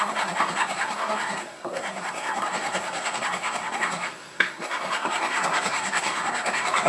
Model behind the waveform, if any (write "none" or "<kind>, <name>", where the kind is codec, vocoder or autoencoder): codec, SNAC